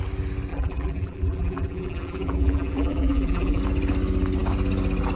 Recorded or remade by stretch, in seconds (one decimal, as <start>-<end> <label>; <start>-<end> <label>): 0.0-0.5 recorded; 0.5-3.6 remade; 3.6-5.2 recorded